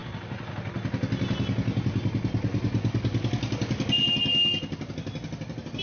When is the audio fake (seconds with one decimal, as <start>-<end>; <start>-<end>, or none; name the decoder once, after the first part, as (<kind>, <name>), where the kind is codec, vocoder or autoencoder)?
none